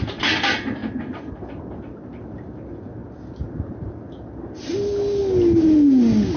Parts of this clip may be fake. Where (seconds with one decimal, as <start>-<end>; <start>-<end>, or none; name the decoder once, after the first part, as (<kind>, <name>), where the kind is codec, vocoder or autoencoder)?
none